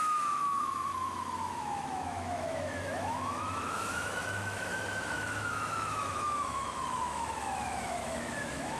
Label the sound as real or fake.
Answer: fake